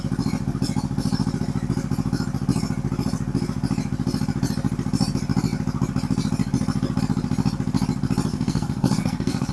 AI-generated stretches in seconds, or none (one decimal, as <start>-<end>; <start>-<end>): 8.3-9.5